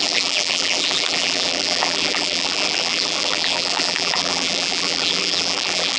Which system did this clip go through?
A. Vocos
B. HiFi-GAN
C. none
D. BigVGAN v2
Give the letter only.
D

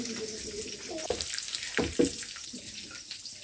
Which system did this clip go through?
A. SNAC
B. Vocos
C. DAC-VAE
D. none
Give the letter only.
D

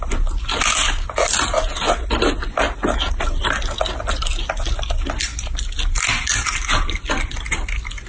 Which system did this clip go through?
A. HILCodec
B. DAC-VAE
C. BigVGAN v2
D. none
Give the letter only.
D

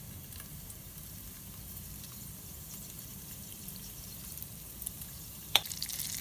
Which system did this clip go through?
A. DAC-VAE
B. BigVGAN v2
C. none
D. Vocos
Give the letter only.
B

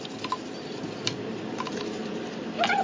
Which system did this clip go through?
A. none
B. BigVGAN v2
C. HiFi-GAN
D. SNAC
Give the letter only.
A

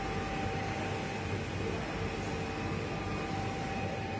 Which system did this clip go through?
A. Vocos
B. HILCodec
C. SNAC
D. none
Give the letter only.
D